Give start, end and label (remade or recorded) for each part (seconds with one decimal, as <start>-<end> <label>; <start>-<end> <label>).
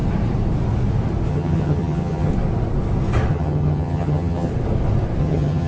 0.0-1.3 recorded; 1.3-2.3 remade; 2.3-3.3 recorded; 3.3-4.5 remade; 4.5-5.2 recorded; 5.2-5.7 remade